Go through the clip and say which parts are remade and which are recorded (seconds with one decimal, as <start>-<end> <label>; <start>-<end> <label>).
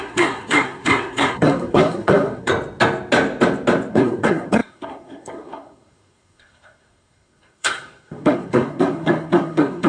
0.0-2.5 remade; 2.5-3.9 recorded; 3.9-9.9 remade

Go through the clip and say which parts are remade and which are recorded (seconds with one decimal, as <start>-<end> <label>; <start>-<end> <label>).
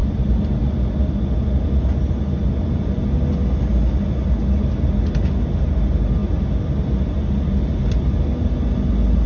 0.0-9.3 recorded